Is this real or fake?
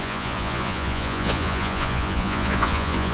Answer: fake